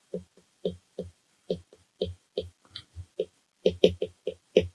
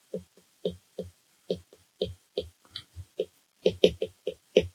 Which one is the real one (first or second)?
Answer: first